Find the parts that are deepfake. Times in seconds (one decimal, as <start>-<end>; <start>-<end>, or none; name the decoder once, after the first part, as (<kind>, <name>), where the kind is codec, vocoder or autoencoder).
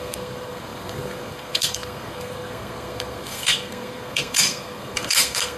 0.0-5.6 (codec, SNAC)